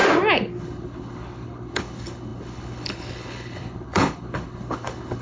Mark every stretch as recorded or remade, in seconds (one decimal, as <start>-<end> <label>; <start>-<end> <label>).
0.0-0.6 recorded; 0.6-5.2 remade